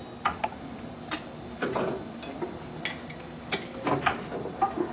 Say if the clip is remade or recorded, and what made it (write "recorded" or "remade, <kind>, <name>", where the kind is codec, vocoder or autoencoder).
recorded